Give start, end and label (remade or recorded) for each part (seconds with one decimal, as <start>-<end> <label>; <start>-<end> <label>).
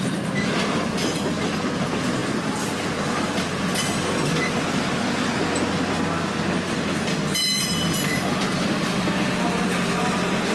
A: 0.0-10.5 recorded